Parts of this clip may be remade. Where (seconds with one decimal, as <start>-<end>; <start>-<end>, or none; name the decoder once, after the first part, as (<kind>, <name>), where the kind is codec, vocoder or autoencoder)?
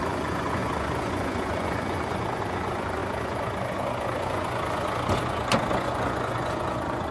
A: 0.0-7.1 (vocoder, Vocos)